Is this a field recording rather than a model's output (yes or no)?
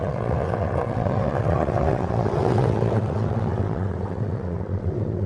no